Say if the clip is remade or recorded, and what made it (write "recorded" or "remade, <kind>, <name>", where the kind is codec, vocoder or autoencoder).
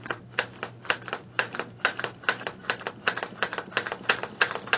recorded